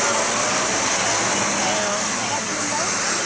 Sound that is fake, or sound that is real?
real